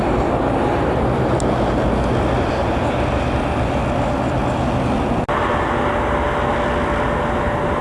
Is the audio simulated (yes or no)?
no